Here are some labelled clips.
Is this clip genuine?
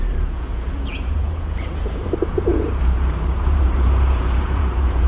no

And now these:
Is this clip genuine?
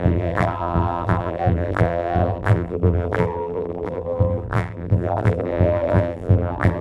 no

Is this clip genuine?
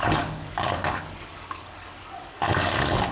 no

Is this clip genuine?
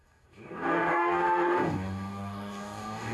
no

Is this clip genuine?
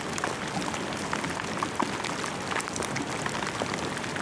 yes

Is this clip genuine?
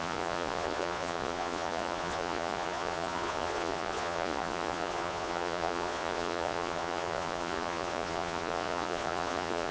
no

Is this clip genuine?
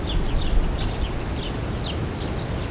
yes